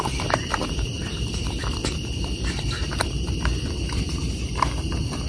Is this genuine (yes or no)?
no